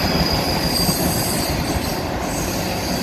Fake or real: real